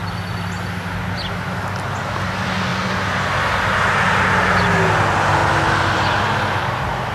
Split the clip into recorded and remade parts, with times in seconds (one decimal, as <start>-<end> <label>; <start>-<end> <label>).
0.0-7.1 recorded